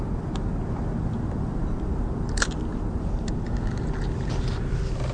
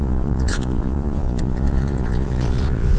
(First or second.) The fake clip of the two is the second